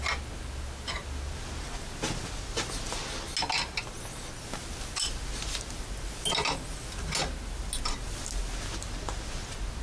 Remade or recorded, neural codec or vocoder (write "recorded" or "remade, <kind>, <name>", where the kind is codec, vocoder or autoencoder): recorded